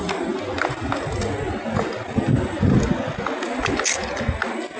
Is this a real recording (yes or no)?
yes